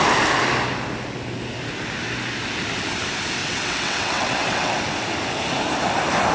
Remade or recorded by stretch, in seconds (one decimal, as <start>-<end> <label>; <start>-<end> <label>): 0.0-3.4 recorded; 3.4-4.8 remade; 4.8-6.3 recorded